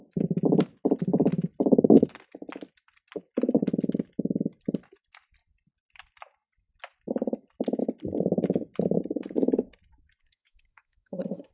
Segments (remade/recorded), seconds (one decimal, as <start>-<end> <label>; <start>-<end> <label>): 0.0-10.2 recorded; 10.2-11.5 remade